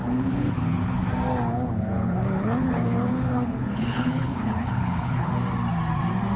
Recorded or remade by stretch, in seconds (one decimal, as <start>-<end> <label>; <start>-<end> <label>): 0.0-1.1 remade; 1.1-1.5 recorded; 1.5-5.3 remade; 5.3-6.4 recorded